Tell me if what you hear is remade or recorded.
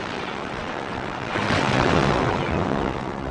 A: remade